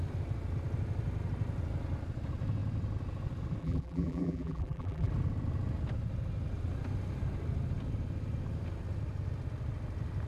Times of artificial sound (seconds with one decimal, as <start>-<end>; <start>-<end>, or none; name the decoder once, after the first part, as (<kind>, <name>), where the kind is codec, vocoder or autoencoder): 3.6-5.1 (vocoder, BigVGAN v2)